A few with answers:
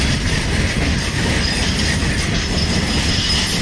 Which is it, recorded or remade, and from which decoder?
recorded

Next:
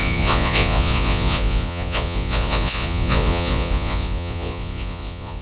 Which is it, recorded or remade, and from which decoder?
remade, vocoder, Vocos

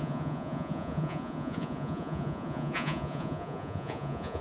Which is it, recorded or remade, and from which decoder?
remade, vocoder, Vocos